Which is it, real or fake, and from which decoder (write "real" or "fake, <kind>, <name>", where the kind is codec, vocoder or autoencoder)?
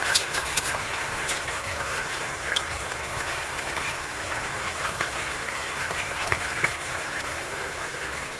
fake, codec, SNAC